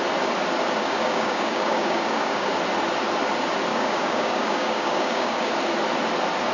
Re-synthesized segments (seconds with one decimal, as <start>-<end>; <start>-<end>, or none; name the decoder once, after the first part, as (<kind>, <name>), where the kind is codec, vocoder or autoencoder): 0.8-2.5 (codec, DAC); 3.7-5.5